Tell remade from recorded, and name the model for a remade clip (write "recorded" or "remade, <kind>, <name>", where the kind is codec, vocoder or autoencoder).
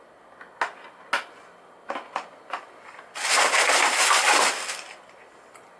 recorded